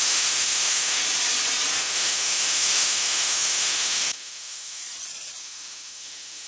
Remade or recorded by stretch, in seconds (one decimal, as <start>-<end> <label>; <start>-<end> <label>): 0.0-1.0 remade; 1.0-1.8 recorded; 1.8-4.8 remade; 4.8-5.4 recorded; 5.4-6.5 remade